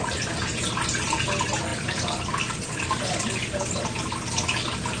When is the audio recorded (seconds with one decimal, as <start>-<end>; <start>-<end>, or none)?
0.0-5.0